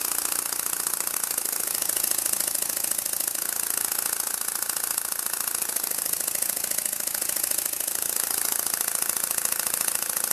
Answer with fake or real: real